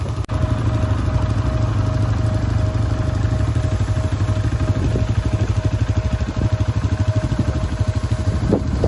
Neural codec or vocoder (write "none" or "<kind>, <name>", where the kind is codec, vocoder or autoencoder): none